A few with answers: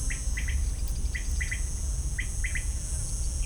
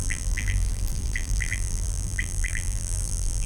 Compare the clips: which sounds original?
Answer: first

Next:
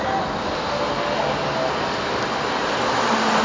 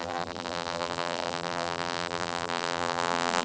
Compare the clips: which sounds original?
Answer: first